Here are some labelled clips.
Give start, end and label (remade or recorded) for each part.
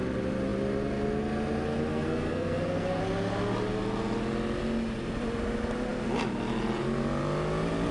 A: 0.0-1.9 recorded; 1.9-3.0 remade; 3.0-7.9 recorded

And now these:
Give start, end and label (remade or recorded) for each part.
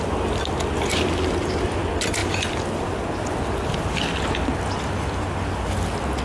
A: 0.0-6.2 recorded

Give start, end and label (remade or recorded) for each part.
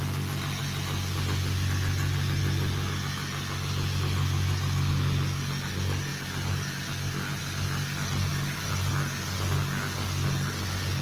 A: 0.0-11.0 recorded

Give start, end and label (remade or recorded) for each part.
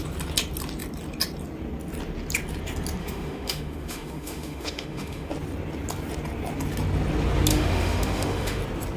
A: 0.0-3.0 recorded; 3.0-5.3 remade; 5.3-7.5 recorded; 7.5-8.6 remade; 8.6-9.0 recorded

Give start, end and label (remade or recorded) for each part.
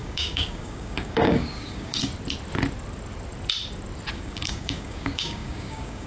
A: 0.0-2.1 remade; 2.1-4.1 recorded; 4.1-6.1 remade